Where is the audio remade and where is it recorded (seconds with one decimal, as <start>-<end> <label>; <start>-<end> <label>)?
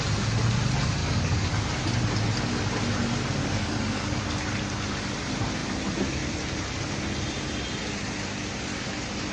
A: 0.0-1.0 recorded; 1.0-1.5 remade; 1.5-3.4 recorded; 3.4-4.2 remade; 4.2-9.3 recorded